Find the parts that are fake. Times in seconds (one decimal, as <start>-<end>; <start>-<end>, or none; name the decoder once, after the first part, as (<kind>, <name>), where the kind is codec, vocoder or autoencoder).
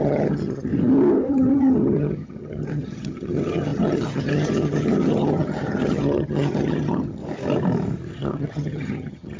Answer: 0.0-0.7 (vocoder, HiFi-GAN); 1.3-7.2; 8.2-9.4